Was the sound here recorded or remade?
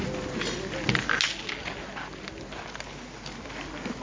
recorded